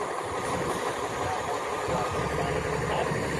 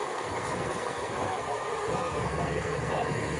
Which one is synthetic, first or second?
second